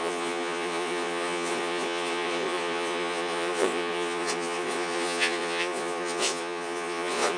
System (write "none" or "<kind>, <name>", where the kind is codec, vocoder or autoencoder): vocoder, Vocos